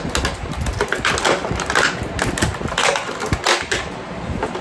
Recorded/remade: recorded